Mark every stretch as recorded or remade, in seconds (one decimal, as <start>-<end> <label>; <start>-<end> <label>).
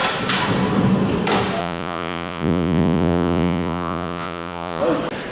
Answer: 0.0-1.6 recorded; 1.6-4.8 remade; 4.8-5.3 recorded